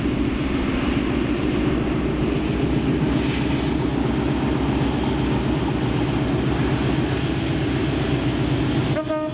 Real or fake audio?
real